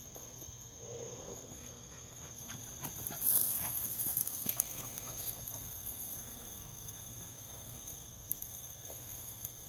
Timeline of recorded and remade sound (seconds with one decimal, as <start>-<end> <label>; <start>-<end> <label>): 0.0-2.6 remade; 2.6-3.3 recorded; 3.3-9.7 remade